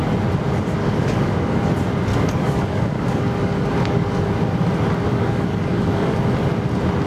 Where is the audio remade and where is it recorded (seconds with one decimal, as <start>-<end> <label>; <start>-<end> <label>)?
0.0-0.8 recorded; 0.8-1.7 remade; 1.7-2.1 recorded; 2.1-4.3 remade; 4.3-5.1 recorded; 5.1-6.2 remade; 6.2-7.1 recorded